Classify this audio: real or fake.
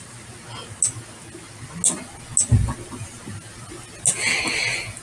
real